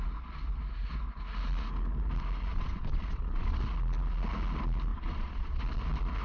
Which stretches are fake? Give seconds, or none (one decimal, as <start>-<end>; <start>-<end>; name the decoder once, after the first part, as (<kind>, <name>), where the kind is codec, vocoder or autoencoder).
2.5-3.6 (vocoder, Vocos); 4.9-5.6